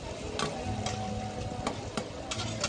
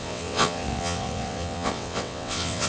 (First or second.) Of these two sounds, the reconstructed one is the second